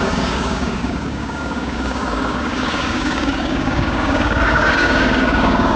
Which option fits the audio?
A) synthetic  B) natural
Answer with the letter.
A